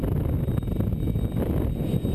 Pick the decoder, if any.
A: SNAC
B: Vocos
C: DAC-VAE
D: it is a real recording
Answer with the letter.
D